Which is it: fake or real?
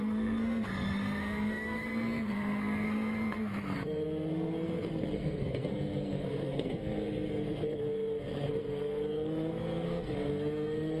fake